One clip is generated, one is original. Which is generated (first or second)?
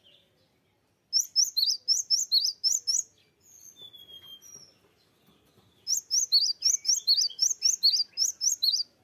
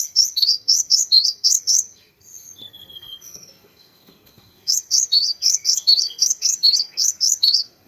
second